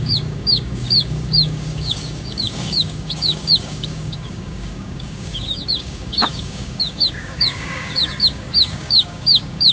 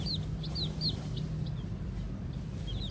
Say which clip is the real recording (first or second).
second